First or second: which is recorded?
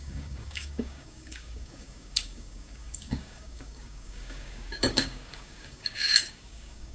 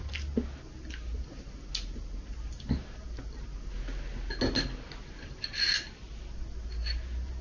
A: second